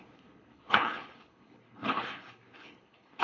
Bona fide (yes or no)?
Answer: no